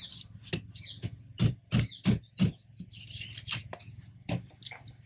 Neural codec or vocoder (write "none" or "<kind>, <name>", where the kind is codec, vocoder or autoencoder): none